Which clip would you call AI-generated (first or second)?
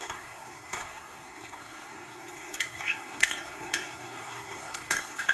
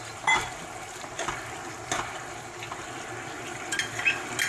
first